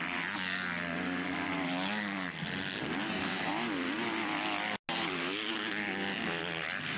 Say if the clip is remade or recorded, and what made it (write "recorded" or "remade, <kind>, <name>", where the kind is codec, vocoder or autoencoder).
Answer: recorded